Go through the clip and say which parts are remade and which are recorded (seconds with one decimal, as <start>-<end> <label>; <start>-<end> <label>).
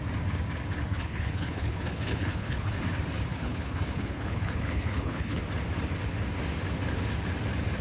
0.0-0.9 recorded; 0.9-2.8 remade; 2.8-3.3 recorded; 3.3-5.4 remade; 5.4-7.8 recorded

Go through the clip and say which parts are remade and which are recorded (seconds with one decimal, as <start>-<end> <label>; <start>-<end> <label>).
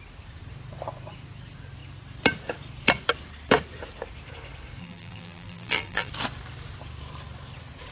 0.0-4.8 recorded; 4.8-6.1 remade; 6.1-7.9 recorded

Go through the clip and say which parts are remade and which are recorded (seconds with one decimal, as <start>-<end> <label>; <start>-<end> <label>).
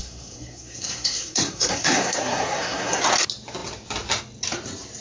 0.0-3.0 remade; 3.0-5.0 recorded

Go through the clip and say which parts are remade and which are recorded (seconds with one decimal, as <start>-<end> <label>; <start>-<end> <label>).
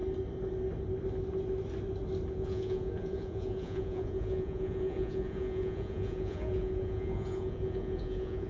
0.0-2.3 recorded; 2.3-8.5 remade